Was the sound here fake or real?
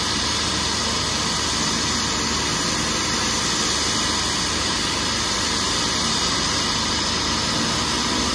real